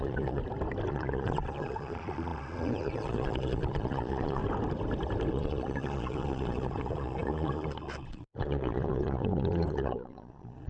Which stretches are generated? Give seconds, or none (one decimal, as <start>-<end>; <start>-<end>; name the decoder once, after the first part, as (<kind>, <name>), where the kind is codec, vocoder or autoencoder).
0.0-0.4 (vocoder, Vocos); 0.9-4.4; 5.3-10.7